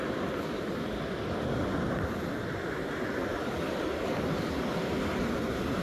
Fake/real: fake